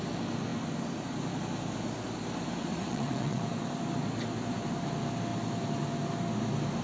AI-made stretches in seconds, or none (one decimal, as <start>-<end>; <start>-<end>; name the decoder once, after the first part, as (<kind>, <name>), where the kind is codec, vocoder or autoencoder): 2.6-3.4 (vocoder, WaveNeXt)